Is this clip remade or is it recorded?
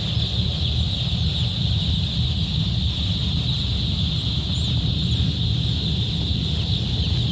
recorded